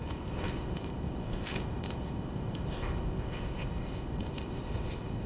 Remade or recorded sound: remade